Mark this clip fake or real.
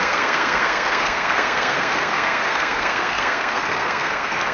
fake